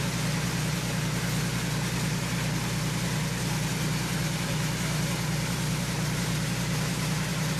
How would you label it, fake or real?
real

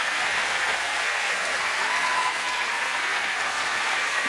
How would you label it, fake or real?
fake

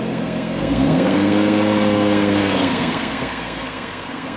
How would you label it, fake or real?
fake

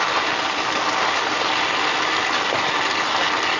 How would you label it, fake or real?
real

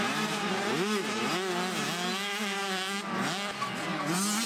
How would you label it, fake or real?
real